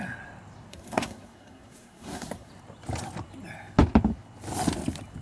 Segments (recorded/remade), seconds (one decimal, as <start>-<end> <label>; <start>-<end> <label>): 0.0-0.7 recorded; 0.7-2.5 remade; 2.5-5.2 recorded